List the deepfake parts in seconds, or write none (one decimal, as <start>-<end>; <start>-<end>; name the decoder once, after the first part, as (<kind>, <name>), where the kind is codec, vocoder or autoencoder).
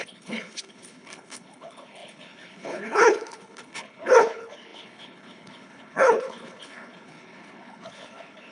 0.0-8.5 (codec, HILCodec)